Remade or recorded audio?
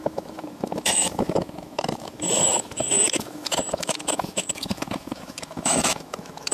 remade